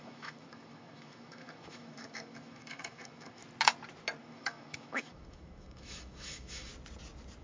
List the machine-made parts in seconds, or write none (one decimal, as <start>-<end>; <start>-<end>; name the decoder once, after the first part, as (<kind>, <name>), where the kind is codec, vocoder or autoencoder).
0.0-3.4 (autoencoder, DAC-VAE); 4.2-6.7